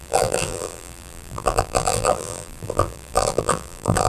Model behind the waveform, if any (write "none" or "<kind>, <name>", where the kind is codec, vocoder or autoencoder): vocoder, BigVGAN v2